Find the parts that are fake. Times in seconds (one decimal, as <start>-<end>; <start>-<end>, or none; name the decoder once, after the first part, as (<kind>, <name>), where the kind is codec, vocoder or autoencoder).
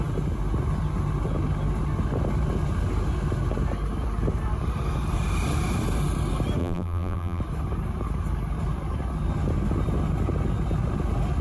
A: 6.6-7.4 (vocoder, BigVGAN v2)